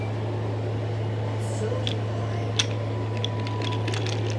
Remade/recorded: recorded